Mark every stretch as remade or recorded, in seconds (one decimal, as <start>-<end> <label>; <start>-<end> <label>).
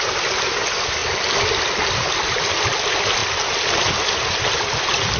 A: 0.0-5.2 recorded